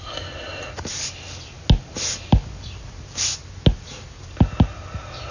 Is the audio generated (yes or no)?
no